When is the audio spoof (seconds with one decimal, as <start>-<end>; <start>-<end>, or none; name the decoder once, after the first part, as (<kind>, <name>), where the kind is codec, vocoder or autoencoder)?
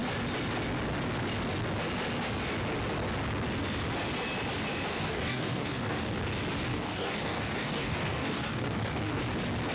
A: 4.9-6.2 (codec, DAC); 6.7-9.2